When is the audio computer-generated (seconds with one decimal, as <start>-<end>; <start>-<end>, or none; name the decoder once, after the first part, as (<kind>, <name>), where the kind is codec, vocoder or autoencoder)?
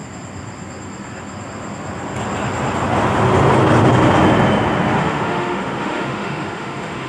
5.0-7.1 (autoencoder, DAC-VAE)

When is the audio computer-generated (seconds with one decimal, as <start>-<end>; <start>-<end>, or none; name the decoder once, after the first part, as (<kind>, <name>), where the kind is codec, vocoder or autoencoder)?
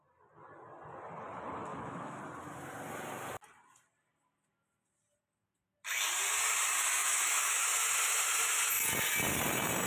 1.7-2.2 (autoencoder, DAC-VAE); 7.0-7.7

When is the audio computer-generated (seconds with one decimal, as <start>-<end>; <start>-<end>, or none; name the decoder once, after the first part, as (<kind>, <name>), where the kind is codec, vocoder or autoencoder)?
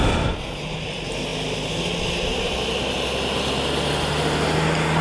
none